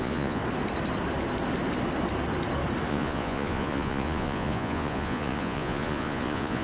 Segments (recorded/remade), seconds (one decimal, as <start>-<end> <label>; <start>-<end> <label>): 0.0-0.4 remade; 0.4-2.9 recorded; 2.9-6.6 remade